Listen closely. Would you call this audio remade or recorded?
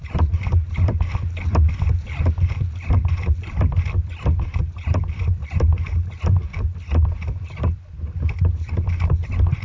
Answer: recorded